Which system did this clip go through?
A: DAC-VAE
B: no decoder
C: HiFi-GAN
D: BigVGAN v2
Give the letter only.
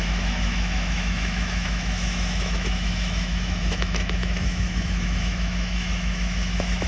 A